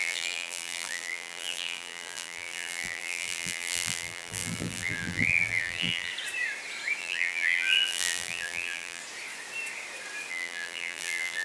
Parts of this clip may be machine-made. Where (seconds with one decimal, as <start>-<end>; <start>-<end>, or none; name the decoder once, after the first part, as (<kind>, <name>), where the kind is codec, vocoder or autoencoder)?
0.0-6.1 (vocoder, BigVGAN v2); 7.0-9.0; 10.3-11.4

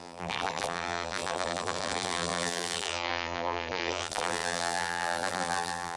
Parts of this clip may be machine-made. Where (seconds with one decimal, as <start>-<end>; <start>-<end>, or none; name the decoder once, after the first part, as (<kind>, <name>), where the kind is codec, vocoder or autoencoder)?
0.0-6.0 (vocoder, BigVGAN v2)

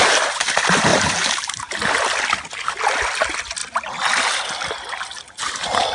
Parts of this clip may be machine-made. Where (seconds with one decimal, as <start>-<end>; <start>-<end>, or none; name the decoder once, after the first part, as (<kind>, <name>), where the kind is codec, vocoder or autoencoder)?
0.9-1.7 (vocoder, BigVGAN v2)